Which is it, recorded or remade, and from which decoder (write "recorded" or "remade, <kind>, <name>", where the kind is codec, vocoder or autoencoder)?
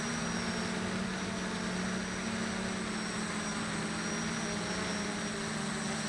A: recorded